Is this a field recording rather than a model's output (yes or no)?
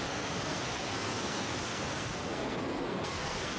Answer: no